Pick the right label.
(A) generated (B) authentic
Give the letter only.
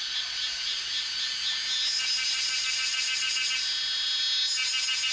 B